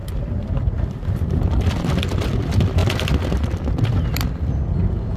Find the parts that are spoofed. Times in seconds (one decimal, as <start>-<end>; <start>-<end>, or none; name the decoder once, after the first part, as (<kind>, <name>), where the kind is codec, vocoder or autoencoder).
none